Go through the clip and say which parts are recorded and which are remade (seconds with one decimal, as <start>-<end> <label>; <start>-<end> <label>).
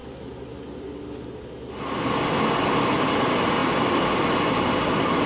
0.0-5.3 recorded